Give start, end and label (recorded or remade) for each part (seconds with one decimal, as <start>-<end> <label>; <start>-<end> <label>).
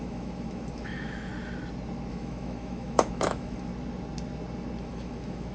0.0-1.3 remade; 1.3-2.1 recorded; 2.1-3.7 remade; 3.7-4.8 recorded; 4.8-5.5 remade